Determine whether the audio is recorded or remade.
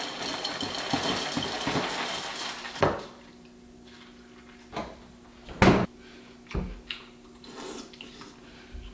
recorded